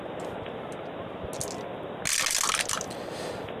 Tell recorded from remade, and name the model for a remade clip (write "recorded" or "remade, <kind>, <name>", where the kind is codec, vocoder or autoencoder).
recorded